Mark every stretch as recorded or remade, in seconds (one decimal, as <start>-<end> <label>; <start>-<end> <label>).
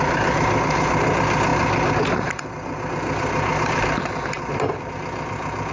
0.0-5.7 recorded